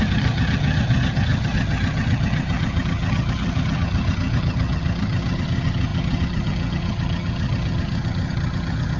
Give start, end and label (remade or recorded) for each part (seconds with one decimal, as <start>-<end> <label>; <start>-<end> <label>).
0.0-9.0 remade